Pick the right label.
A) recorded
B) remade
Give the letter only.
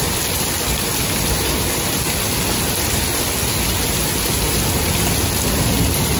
A